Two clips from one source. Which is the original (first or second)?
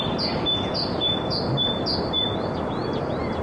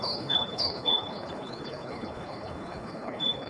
first